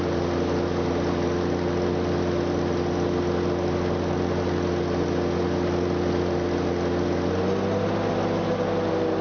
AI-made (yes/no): no